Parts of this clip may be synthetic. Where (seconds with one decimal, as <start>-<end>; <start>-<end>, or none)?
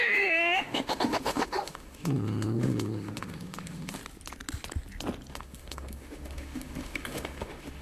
0.0-4.0; 5.3-7.8